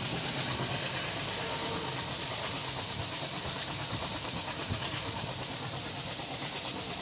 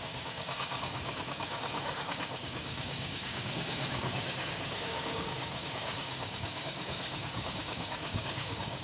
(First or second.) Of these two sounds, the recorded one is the first